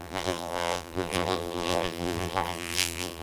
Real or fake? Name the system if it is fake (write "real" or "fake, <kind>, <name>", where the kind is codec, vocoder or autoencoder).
fake, vocoder, BigVGAN v2